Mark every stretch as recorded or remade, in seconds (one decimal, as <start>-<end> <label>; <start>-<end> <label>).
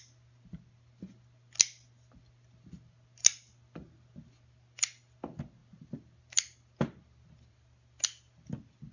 0.0-8.9 recorded